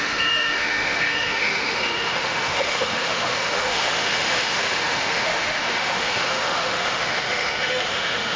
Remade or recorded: remade